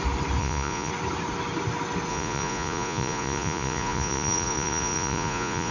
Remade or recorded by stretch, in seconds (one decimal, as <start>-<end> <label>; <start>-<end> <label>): 0.0-0.4 recorded; 0.4-0.9 remade; 0.9-2.1 recorded; 2.1-5.7 remade